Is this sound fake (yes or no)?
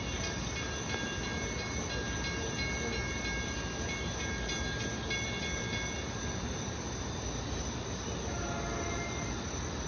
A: no